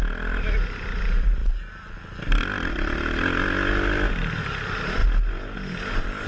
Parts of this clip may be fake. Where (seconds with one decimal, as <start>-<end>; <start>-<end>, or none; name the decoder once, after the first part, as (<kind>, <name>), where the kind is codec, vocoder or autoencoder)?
none